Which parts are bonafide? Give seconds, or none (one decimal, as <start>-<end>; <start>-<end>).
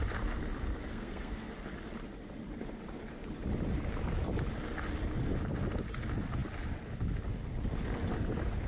0.0-0.9; 1.5-8.7